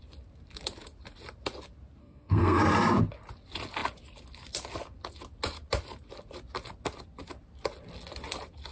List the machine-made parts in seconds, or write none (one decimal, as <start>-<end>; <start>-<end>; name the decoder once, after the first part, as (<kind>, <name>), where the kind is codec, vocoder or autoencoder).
2.0-2.6 (codec, SNAC)